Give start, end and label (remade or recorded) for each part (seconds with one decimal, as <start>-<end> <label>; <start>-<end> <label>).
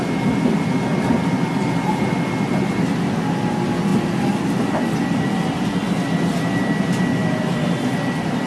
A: 0.0-0.9 recorded; 0.9-2.1 remade; 2.1-3.9 recorded; 3.9-5.5 remade; 5.5-7.2 recorded; 7.2-8.5 remade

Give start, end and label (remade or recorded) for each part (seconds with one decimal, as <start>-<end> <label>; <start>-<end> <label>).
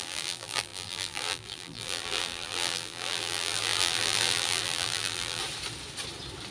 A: 0.0-5.4 remade; 5.4-6.5 recorded